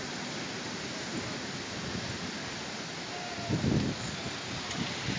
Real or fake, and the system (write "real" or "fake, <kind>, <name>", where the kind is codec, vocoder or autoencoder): real